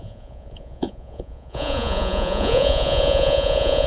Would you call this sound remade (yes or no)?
yes